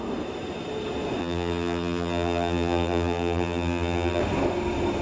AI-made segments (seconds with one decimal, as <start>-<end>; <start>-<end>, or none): 1.2-4.2